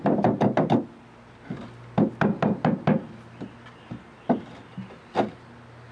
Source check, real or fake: real